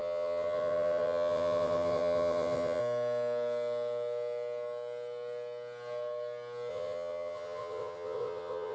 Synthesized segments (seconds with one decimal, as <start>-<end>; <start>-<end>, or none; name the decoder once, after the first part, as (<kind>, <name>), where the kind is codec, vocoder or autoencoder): 0.0-2.8 (vocoder, WaveNeXt); 6.7-8.7